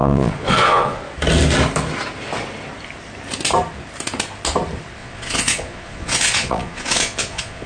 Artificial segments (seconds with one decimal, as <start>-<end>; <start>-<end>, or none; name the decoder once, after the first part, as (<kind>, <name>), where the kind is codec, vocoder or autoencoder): 0.0-1.0 (vocoder, Vocos); 5.0-7.7